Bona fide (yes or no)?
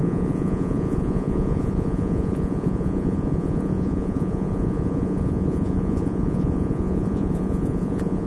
no